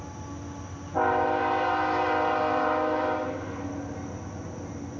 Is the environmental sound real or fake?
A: real